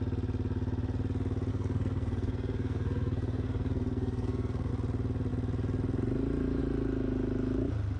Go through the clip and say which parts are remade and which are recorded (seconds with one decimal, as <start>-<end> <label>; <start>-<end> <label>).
0.0-1.5 recorded; 1.5-4.7 remade; 4.7-8.0 recorded